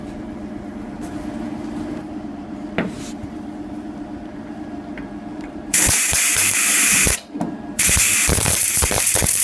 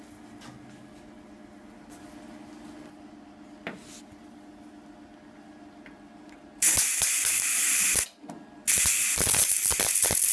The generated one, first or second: first